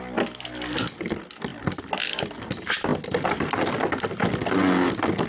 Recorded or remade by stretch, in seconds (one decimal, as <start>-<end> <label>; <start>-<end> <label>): 0.0-5.3 recorded